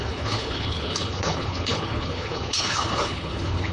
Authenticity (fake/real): fake